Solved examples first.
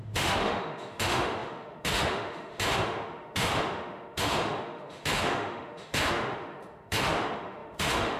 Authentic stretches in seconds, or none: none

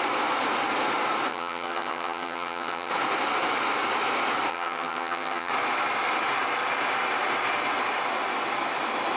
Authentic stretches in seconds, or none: 0.0-1.3; 2.9-4.5; 5.5-9.2

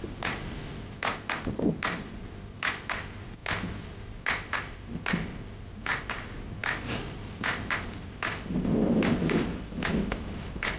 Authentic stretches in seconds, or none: 0.0-10.8

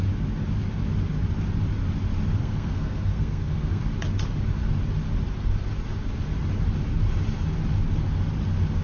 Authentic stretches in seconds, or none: 0.0-2.4; 3.8-8.8

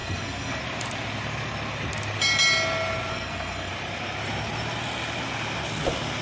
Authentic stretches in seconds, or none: 0.6-3.1; 3.7-6.2

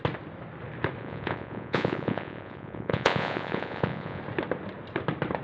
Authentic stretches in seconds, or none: 0.0-1.0; 4.2-5.4